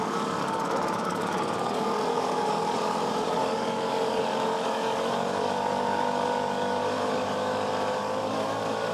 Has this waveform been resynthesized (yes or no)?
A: yes